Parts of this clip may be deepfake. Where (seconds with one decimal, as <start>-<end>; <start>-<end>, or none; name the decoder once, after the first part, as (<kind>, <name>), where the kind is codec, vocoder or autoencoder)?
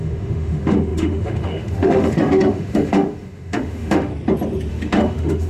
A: 0.0-4.1 (autoencoder, DAC-VAE); 4.7-5.5